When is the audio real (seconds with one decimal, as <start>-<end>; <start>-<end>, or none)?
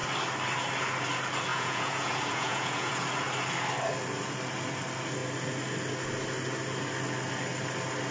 0.0-1.5; 2.9-8.1